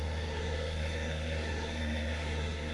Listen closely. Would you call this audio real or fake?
fake